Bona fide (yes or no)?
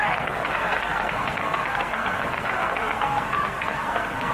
no